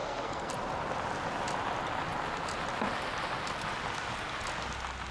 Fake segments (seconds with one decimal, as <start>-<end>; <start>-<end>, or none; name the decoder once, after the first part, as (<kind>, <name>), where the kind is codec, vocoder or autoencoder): 0.0-0.5 (codec, SNAC)